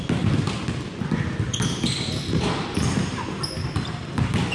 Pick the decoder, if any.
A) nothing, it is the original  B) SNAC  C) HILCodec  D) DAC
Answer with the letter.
A